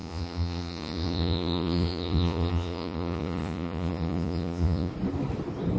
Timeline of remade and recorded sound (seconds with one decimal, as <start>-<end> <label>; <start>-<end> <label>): 0.0-4.9 remade; 4.9-5.8 recorded